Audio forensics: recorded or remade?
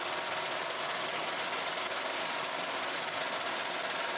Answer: recorded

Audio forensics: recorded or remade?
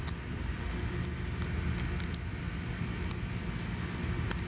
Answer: recorded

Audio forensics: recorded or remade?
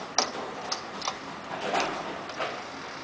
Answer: recorded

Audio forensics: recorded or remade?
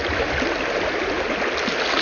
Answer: recorded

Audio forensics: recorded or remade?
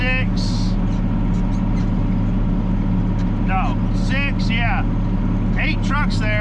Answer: recorded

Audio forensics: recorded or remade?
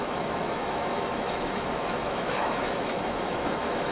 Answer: remade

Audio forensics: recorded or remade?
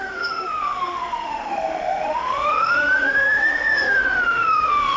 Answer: remade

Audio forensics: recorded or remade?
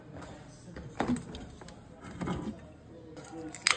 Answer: recorded